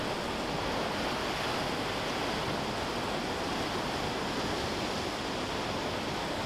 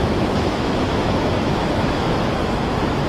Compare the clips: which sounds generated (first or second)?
second